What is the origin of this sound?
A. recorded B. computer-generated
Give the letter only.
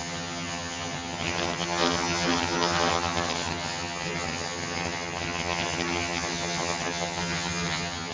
B